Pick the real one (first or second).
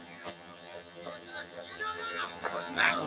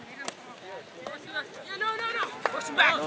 second